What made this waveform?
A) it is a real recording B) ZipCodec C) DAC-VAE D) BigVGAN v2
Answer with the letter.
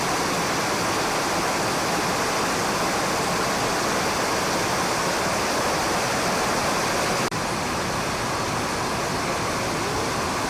A